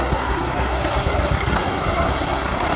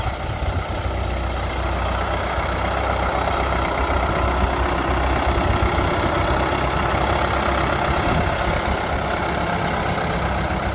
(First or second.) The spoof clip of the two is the first